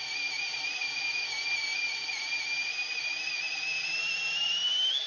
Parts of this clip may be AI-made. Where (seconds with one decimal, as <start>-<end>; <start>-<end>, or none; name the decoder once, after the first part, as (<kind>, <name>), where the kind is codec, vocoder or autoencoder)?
none